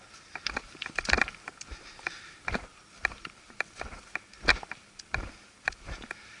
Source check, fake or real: fake